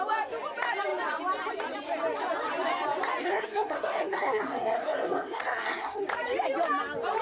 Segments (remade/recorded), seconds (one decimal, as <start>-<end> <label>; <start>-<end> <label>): 0.0-3.2 recorded; 3.2-6.0 remade; 6.0-7.2 recorded